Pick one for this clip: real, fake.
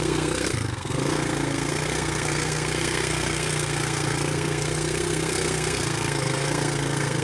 fake